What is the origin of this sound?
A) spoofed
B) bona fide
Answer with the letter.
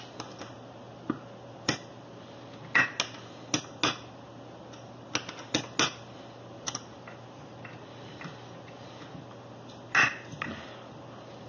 B